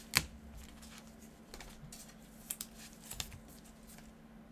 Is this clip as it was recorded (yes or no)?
yes